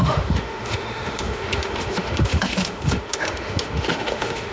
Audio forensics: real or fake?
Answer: fake